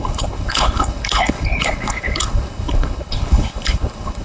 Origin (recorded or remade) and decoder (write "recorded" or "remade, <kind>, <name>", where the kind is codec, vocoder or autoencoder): remade, codec, HILCodec